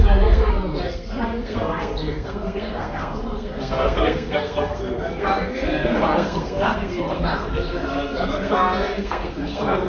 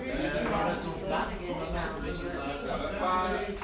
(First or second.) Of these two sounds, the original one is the second